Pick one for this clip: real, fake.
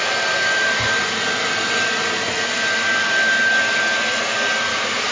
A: real